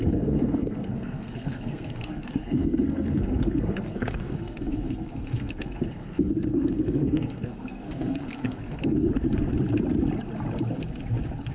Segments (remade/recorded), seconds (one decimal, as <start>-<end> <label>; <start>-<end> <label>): 0.0-9.1 remade; 9.1-11.5 recorded